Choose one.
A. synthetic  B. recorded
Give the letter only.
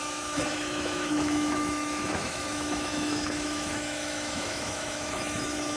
A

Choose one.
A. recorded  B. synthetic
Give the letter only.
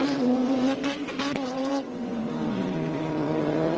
B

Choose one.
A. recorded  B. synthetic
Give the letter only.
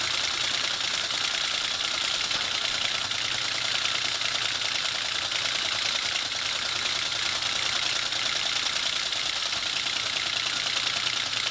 A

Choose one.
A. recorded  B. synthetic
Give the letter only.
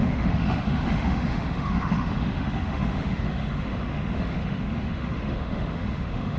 B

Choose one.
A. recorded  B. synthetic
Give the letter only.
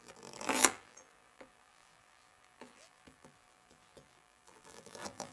B